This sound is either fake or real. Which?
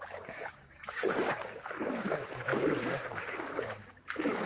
fake